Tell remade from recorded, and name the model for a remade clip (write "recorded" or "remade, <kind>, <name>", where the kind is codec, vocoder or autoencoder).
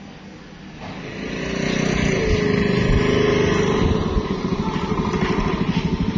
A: recorded